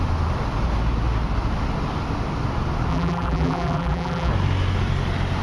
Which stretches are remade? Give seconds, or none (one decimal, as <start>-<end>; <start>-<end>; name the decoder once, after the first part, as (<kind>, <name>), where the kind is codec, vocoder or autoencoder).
2.9-4.3 (vocoder, BigVGAN v2)